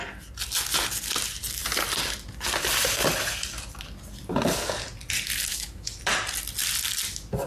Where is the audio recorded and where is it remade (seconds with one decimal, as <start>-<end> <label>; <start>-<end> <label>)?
0.0-5.5 recorded; 5.5-6.0 remade; 6.0-7.5 recorded